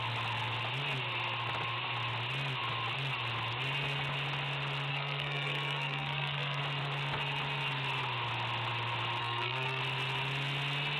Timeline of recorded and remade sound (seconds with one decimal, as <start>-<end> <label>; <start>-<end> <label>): 0.0-4.9 recorded; 4.9-6.6 remade; 6.6-9.2 recorded; 9.2-9.8 remade; 9.8-11.0 recorded